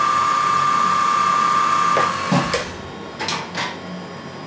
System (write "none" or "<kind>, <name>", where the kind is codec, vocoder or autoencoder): none